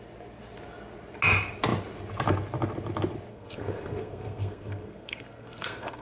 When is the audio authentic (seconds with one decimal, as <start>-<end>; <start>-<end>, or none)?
0.0-3.3